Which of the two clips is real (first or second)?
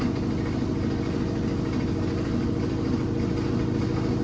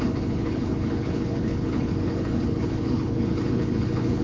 first